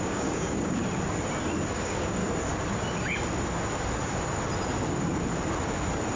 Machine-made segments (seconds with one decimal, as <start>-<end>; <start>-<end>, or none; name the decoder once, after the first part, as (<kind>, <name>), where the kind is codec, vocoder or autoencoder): 0.0-0.8 (codec, DAC); 1.7-2.2